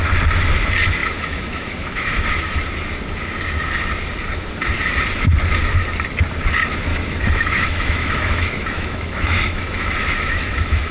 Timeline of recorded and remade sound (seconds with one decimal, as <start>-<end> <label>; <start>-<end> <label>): 0.0-1.0 recorded; 1.0-2.6 remade; 2.6-6.9 recorded; 6.9-10.9 remade